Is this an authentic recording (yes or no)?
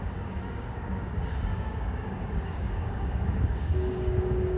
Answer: no